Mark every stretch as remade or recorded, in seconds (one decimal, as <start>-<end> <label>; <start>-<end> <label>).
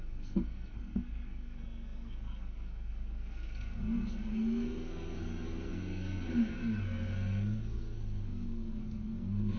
0.0-9.6 remade